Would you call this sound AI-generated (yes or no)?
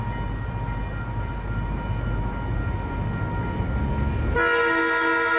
no